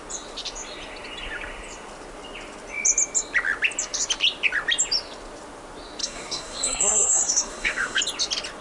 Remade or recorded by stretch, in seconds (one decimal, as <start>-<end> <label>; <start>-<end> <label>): 0.0-6.0 recorded; 6.0-8.0 remade; 8.0-8.6 recorded